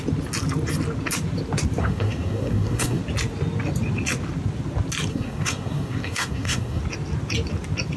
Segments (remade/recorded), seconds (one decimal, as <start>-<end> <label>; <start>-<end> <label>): 0.0-1.8 recorded; 1.8-3.0 remade; 3.0-5.1 recorded; 5.1-6.8 remade; 6.8-8.0 recorded